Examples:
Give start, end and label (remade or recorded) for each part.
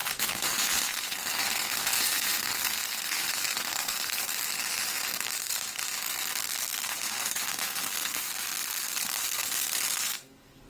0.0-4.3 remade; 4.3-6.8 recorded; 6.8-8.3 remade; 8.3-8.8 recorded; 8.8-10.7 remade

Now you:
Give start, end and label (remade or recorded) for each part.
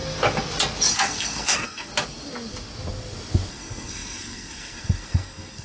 0.0-0.9 recorded; 0.9-1.9 remade; 1.9-3.5 recorded; 3.5-5.6 remade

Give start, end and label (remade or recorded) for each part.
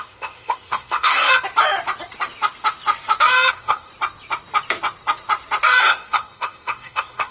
0.0-1.3 remade; 1.3-3.5 recorded; 3.5-3.9 remade; 3.9-5.8 recorded; 5.8-7.3 remade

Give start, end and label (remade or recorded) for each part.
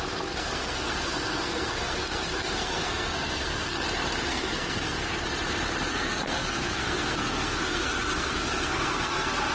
0.0-3.8 remade; 3.8-4.3 recorded; 4.3-5.1 remade; 5.1-5.9 recorded; 5.9-9.5 remade